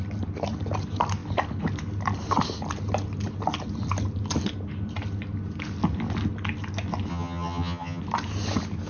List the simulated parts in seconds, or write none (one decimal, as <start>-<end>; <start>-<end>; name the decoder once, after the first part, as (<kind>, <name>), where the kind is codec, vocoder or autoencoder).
7.1-8.0 (vocoder, HiFi-GAN)